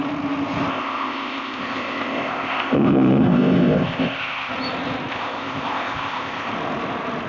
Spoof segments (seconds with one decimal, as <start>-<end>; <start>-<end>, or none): 0.7-4.5; 5.1-6.5

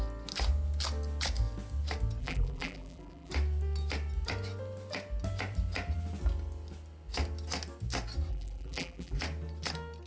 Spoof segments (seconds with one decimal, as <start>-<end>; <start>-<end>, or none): 2.2-3.3; 8.3-9.2